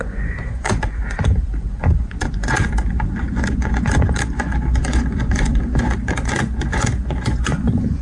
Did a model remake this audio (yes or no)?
yes